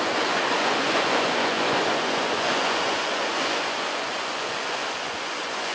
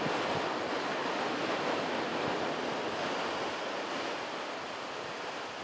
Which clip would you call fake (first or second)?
first